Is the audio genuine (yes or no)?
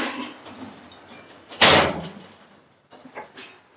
yes